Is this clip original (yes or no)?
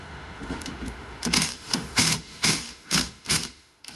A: no